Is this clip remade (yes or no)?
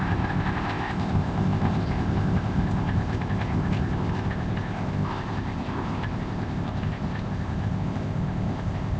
yes